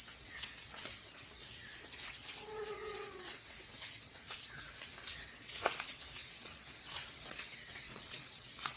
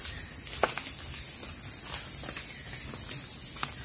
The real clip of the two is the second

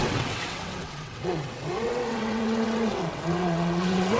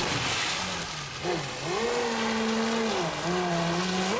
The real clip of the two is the second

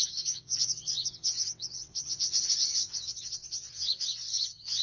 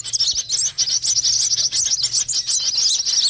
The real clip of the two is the second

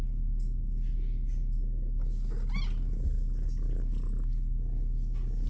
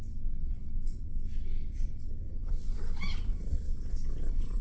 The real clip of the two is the first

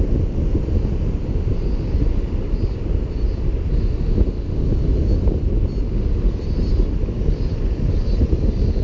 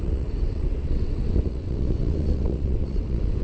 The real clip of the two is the first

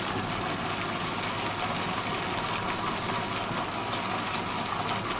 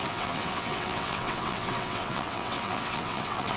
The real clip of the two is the first